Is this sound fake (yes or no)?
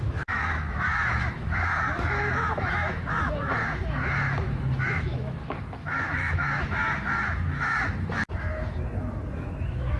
yes